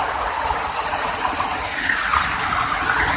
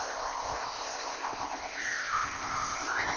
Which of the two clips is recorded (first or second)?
first